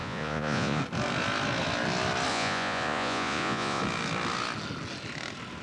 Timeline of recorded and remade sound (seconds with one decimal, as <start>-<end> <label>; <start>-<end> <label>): 0.0-0.8 remade; 0.8-2.3 recorded; 2.3-3.8 remade; 3.8-5.6 recorded